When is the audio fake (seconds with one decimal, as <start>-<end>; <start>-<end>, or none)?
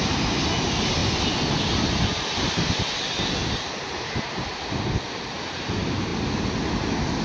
1.0-2.8